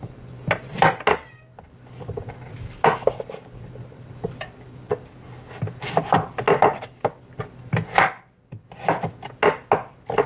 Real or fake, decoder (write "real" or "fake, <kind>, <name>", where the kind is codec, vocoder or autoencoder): real